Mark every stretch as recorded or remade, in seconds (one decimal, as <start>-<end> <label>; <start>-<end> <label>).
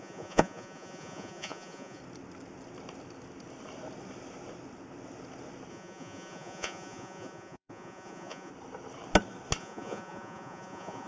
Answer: 0.0-2.0 remade; 2.0-5.7 recorded; 5.7-8.5 remade; 8.5-9.6 recorded; 9.6-11.1 remade